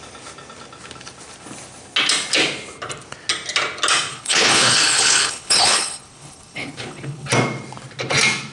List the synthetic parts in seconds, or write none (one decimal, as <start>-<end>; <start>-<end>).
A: 4.1-7.3